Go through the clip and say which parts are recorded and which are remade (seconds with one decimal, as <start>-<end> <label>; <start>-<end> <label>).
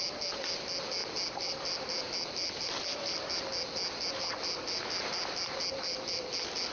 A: 0.0-6.7 recorded